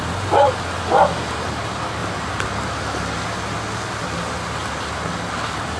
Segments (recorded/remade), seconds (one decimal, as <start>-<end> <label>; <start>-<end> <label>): 0.0-5.8 recorded